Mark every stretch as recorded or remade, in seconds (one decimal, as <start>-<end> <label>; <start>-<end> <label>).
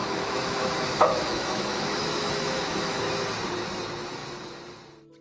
0.0-3.1 remade; 3.1-5.2 recorded